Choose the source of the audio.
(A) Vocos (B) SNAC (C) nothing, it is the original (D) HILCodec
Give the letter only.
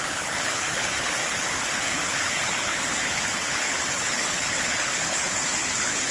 D